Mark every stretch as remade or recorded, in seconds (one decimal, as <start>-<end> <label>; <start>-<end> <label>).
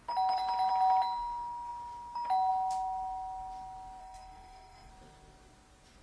0.0-4.0 recorded; 4.0-4.9 remade; 4.9-6.0 recorded